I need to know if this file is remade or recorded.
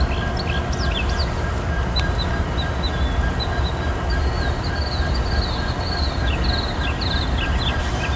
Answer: recorded